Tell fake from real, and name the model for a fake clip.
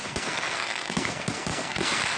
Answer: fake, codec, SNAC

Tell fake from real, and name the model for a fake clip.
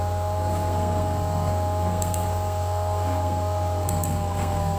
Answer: fake, codec, SNAC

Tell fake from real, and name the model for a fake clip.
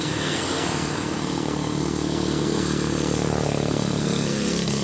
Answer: fake, codec, SNAC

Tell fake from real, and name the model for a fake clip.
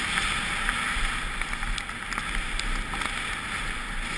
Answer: real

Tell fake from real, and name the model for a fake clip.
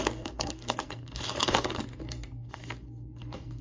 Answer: fake, codec, SNAC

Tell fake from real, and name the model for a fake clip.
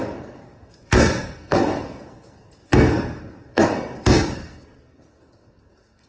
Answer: fake, codec, SNAC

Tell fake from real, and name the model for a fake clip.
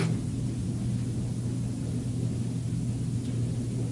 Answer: real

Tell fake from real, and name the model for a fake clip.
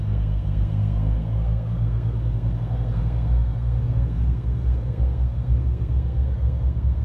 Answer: fake, codec, SNAC